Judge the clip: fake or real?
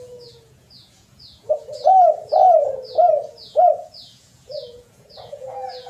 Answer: fake